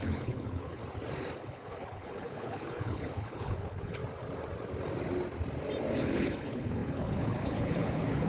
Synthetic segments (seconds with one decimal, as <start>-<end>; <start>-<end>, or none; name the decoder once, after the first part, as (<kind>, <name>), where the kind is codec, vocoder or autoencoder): 0.0-0.8 (codec, HILCodec); 1.4-4.0; 5.9-8.3